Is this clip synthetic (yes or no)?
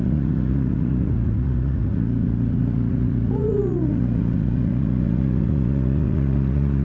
yes